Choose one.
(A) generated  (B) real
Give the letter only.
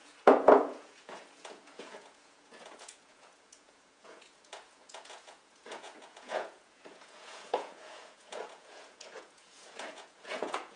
A